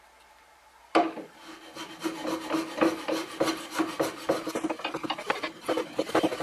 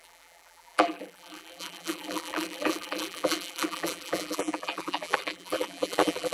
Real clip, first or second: first